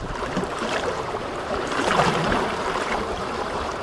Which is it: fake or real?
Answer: fake